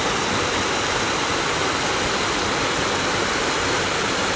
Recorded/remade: recorded